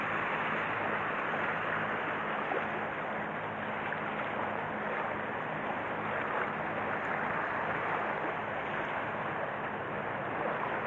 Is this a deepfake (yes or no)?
no